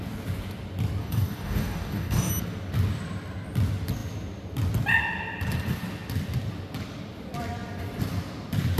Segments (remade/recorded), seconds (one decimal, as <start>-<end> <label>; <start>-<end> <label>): 0.0-1.0 recorded; 1.0-2.3 remade; 2.3-8.8 recorded